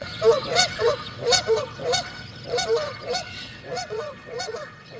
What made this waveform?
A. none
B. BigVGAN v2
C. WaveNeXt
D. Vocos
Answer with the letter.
C